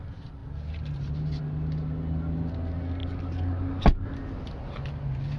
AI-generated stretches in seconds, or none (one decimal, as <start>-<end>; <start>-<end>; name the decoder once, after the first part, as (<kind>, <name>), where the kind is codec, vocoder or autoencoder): none